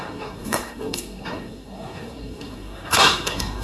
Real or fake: fake